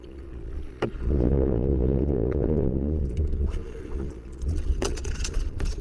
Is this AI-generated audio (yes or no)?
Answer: yes